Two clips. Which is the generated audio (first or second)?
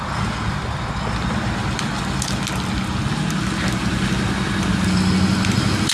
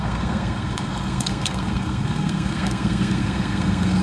second